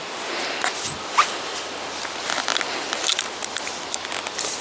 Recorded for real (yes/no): yes